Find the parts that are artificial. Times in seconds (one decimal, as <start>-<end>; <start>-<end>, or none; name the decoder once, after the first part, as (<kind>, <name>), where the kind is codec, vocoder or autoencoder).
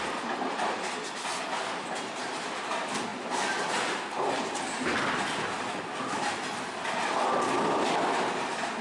3.1-3.8 (vocoder, BigVGAN v2)